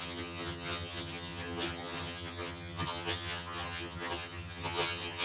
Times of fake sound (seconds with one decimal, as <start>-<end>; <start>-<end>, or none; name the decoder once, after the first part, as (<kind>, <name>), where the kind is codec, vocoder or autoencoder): 0.0-5.2 (vocoder, HiFi-GAN)